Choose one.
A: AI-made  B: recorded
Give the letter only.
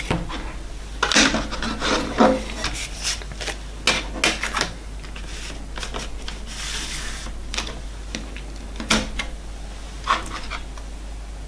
B